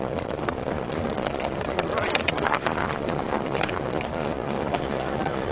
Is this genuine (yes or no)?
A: no